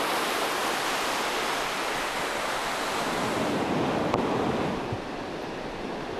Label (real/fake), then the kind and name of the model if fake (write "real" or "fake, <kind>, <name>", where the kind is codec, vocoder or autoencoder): fake, vocoder, BigVGAN v2